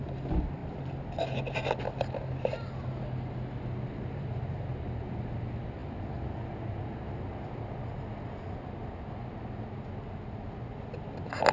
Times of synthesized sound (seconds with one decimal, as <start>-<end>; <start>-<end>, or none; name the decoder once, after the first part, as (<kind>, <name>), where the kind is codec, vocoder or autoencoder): none